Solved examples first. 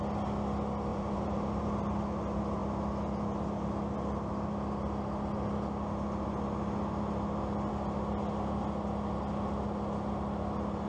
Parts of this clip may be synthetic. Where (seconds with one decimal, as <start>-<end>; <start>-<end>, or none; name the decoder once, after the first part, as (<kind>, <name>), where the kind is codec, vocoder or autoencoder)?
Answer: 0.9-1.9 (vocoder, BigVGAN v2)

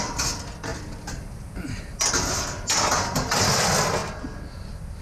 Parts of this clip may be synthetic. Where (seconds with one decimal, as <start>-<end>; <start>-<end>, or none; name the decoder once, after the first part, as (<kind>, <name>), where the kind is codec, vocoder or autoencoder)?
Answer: none

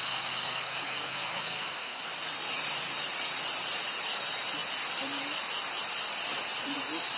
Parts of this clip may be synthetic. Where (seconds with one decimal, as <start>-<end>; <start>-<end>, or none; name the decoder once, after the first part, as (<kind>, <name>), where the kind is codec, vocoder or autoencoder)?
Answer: 0.0-2.0 (codec, SNAC)

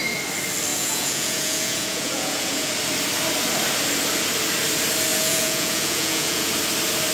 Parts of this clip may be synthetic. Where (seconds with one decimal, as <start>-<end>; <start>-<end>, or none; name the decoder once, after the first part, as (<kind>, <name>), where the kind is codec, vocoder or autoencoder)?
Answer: 0.7-2.7 (vocoder, Vocos); 5.1-6.5

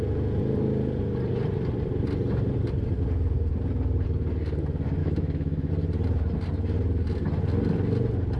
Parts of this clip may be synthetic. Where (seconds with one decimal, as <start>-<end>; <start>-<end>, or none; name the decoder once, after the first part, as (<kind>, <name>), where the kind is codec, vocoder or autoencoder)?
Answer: 5.0-5.7 (autoencoder, DAC-VAE)

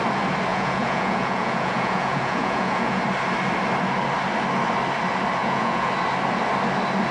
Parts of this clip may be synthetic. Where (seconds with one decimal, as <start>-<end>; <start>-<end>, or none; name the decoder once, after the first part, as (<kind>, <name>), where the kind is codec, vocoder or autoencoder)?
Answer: 0.5-3.0 (vocoder, Vocos); 5.4-5.9